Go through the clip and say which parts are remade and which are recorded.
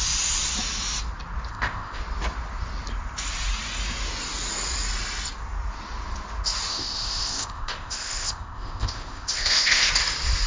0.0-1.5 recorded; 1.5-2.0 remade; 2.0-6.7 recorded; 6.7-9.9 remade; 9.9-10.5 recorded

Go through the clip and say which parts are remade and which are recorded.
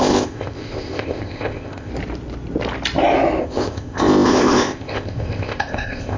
0.0-1.9 remade; 1.9-3.4 recorded; 3.4-6.2 remade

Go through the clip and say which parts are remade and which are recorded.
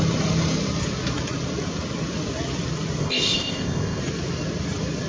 0.0-3.0 recorded; 3.0-4.0 remade; 4.0-5.1 recorded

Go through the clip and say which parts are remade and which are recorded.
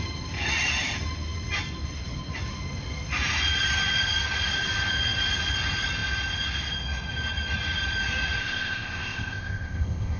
0.0-8.4 recorded; 8.4-10.2 remade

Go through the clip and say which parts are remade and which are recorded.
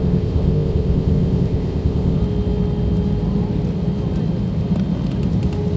0.0-2.2 remade; 2.2-5.8 recorded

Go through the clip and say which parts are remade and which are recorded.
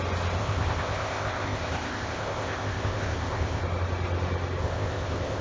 0.0-0.4 recorded; 0.4-3.6 remade; 3.6-4.6 recorded; 4.6-5.4 remade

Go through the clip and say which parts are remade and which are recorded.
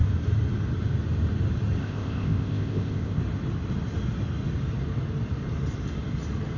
0.0-1.8 recorded; 1.8-3.2 remade; 3.2-6.6 recorded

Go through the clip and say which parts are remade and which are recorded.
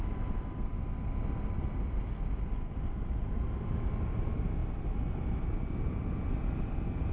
0.0-7.1 recorded